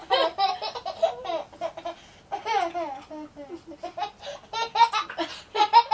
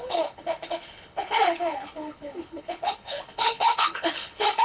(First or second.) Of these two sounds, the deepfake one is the second